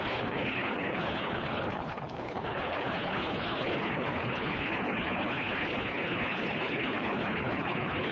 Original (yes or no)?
no